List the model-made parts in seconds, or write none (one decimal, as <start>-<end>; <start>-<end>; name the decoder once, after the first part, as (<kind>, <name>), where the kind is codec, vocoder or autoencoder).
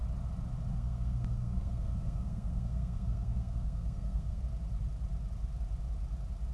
0.7-4.4 (codec, SNAC)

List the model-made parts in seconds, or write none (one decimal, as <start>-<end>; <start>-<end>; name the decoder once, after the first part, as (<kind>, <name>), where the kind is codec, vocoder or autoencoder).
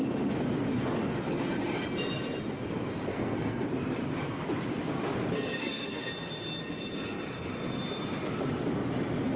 3.1-3.7 (codec, SNAC); 5.6-6.1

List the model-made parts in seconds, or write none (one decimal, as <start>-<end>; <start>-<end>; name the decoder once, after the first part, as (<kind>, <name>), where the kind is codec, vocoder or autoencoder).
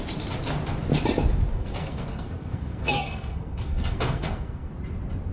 1.5-4.7 (codec, SNAC)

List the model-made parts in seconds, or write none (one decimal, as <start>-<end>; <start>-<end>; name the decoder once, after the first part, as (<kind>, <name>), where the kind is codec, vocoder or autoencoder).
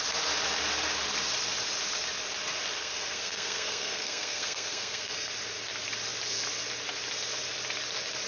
2.8-5.3 (codec, SNAC)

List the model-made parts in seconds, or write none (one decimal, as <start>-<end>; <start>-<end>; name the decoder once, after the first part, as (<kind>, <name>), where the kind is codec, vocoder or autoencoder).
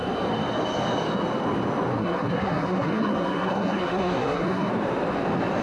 2.0-4.7 (codec, SNAC)